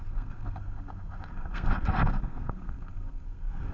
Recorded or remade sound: remade